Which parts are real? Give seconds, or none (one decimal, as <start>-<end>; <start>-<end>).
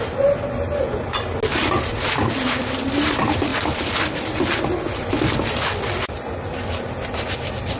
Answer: 0.0-7.8